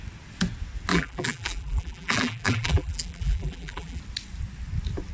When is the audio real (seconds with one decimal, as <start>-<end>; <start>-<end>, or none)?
0.0-0.9; 4.0-5.1